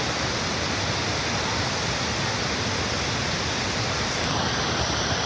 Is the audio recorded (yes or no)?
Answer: yes